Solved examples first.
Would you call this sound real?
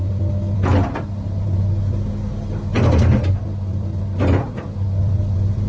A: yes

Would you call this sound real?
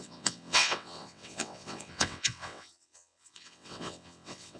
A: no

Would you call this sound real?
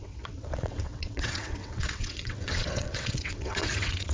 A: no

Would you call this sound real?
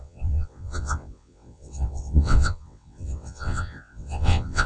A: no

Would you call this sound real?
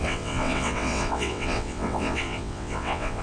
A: no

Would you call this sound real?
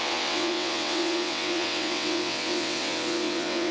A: no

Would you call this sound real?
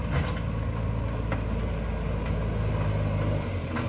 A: yes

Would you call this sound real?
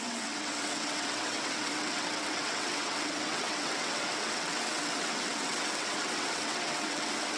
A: no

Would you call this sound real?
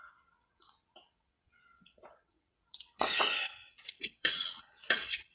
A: no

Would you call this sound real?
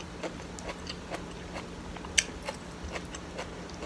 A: yes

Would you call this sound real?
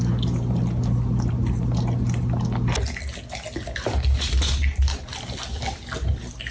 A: yes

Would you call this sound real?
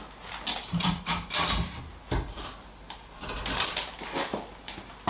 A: yes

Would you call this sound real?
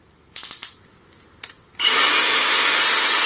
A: yes